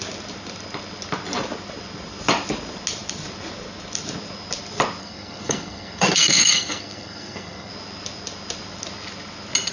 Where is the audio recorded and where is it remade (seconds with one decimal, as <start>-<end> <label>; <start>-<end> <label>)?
0.0-5.0 recorded; 5.0-7.7 remade; 7.7-9.7 recorded